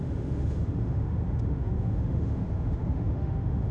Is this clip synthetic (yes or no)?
yes